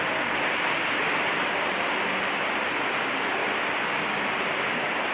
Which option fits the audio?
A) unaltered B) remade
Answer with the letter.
A